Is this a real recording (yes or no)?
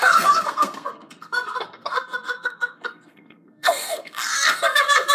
no